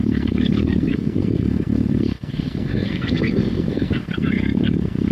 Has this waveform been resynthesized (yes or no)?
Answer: yes